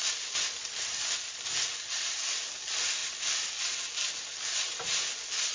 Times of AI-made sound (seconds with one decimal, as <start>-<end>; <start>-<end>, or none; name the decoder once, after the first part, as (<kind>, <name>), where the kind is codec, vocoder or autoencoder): none